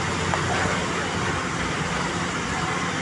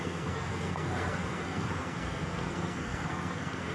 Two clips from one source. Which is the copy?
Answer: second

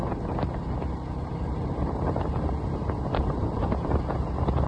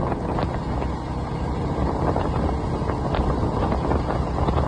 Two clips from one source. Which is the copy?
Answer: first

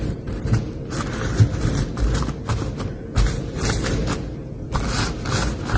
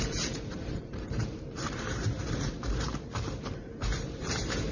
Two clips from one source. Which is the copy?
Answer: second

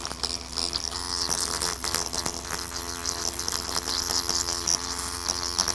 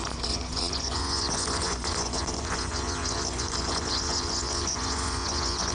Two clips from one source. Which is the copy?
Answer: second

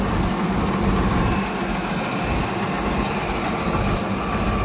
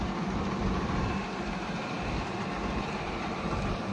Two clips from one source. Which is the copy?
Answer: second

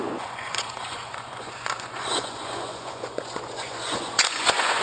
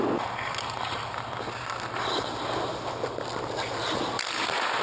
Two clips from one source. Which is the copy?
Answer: first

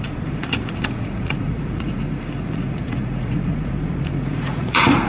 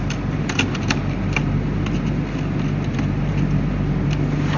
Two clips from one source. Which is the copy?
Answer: first